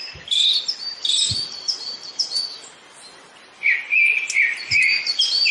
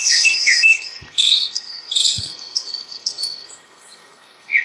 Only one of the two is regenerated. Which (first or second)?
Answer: second